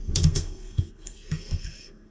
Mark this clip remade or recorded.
remade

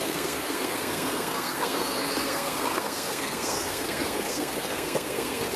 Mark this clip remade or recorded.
remade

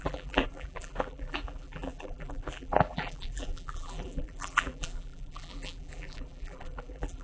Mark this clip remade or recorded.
remade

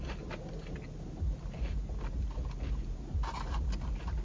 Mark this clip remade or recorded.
recorded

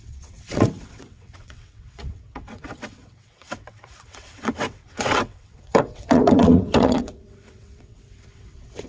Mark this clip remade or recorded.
remade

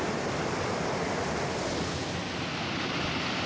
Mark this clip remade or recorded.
recorded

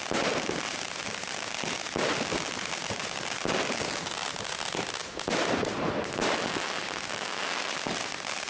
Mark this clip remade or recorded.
recorded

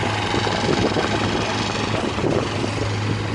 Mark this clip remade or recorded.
recorded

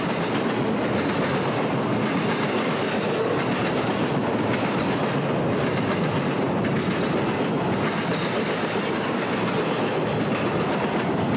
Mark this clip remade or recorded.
recorded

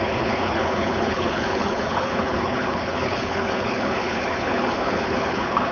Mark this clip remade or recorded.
remade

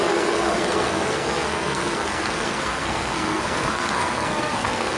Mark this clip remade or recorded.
remade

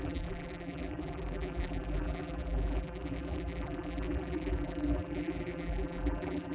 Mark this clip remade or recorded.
remade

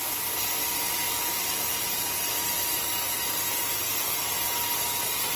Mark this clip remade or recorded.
recorded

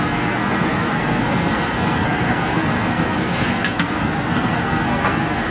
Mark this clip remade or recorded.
remade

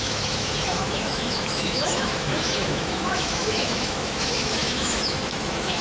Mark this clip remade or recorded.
remade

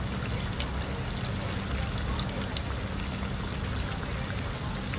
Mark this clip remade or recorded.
recorded